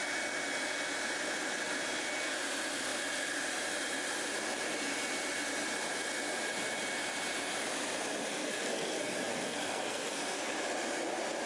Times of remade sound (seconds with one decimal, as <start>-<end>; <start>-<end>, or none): 8.3-10.5